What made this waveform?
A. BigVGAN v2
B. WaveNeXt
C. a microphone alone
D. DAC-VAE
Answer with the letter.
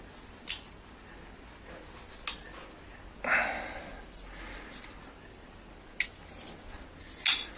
C